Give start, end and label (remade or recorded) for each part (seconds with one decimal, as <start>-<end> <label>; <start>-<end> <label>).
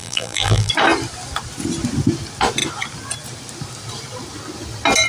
0.0-0.7 remade; 0.7-5.1 recorded